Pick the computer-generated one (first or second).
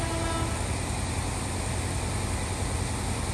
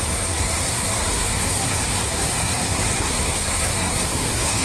second